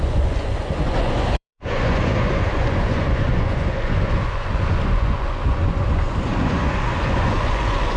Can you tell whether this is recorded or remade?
remade